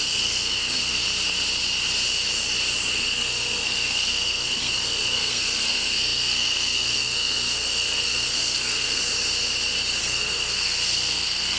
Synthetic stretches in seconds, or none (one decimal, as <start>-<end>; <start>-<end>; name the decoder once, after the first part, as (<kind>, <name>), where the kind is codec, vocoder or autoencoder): 0.0-1.0 (codec, SNAC); 2.9-9.0; 10.0-11.6